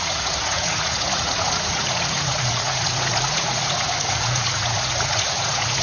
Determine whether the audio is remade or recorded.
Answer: remade